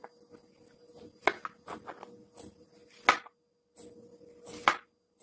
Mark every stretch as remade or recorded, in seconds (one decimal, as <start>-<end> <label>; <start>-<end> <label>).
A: 0.0-5.2 recorded